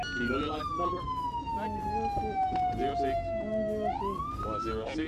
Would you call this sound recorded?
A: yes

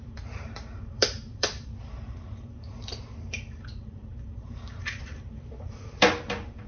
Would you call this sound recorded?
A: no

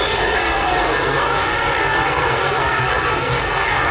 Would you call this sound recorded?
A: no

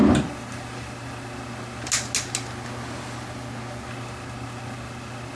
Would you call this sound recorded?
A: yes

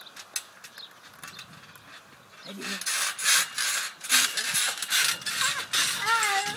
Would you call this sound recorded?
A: yes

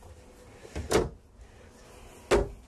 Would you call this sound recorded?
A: yes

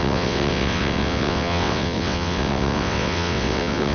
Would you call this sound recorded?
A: no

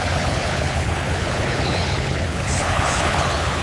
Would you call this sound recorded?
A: no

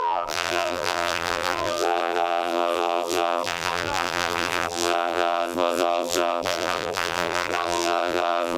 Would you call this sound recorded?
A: no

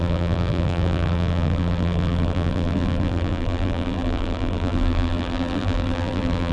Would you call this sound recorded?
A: no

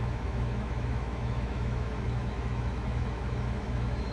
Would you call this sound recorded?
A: no